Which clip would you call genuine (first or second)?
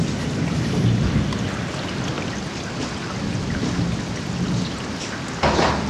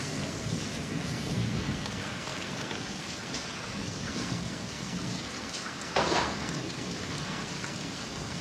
first